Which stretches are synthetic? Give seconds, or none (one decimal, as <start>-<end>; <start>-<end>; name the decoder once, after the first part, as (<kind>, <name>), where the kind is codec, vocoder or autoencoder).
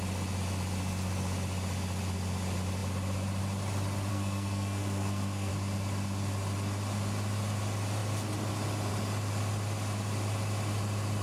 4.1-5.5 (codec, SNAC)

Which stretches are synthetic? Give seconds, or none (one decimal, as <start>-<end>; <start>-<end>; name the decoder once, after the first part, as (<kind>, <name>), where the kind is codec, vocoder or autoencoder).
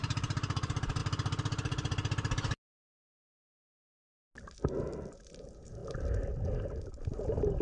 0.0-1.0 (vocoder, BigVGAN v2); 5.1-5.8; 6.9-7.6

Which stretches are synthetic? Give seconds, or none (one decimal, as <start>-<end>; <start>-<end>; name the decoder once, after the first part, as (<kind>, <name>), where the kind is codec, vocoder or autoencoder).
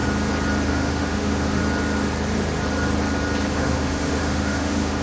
0.7-1.6 (autoencoder, DAC-VAE); 3.5-5.0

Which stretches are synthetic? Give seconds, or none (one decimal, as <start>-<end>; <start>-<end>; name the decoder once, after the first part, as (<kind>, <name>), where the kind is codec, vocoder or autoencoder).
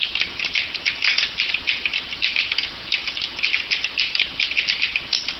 none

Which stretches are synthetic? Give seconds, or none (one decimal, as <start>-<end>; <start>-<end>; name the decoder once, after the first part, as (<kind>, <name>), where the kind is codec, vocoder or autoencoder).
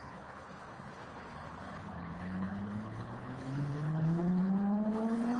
0.0-5.4 (codec, HILCodec)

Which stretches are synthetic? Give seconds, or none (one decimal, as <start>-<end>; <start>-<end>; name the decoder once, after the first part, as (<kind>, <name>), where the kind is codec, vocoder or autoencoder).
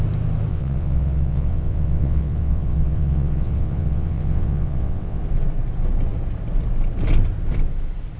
0.5-5.2 (vocoder, WaveNeXt)